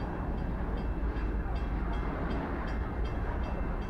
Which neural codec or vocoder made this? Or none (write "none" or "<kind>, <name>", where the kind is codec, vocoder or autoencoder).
none